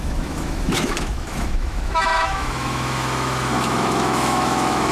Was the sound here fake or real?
fake